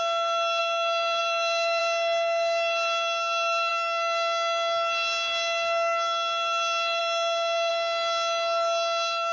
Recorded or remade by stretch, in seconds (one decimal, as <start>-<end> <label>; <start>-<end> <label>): 0.0-0.6 recorded; 0.6-1.2 remade; 1.2-7.0 recorded; 7.0-7.7 remade; 7.7-9.3 recorded